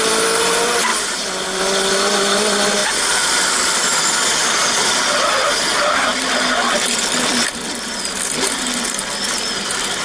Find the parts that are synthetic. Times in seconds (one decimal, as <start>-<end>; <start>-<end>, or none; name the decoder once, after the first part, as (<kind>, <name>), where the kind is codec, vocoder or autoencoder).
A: 0.9-1.6 (vocoder, BigVGAN v2); 2.8-4.0